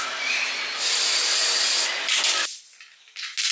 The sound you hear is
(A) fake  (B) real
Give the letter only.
B